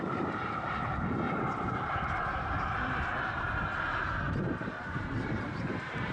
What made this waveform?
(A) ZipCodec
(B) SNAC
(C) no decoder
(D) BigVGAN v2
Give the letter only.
D